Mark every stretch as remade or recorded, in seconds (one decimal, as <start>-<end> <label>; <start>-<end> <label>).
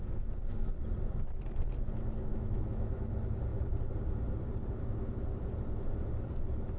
0.0-2.3 recorded; 2.3-3.1 remade; 3.1-6.8 recorded